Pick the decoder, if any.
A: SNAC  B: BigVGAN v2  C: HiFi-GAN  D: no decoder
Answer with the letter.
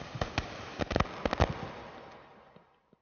D